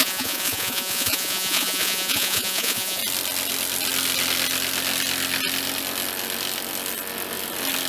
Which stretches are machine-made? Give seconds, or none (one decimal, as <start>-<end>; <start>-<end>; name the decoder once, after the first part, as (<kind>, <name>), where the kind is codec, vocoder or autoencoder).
0.0-3.0 (vocoder, Vocos)